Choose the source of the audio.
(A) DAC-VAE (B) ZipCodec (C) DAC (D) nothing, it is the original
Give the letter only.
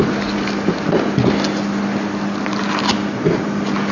D